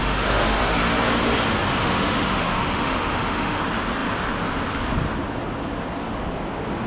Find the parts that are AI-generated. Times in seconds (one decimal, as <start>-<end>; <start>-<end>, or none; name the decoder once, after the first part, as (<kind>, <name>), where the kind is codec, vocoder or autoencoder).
0.0-0.6 (autoencoder, DAC-VAE); 1.8-3.6